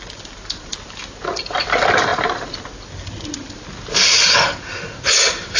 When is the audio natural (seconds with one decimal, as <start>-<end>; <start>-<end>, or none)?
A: 0.0-5.6